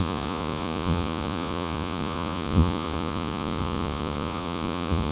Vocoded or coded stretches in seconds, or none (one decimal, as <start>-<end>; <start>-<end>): 0.0-5.1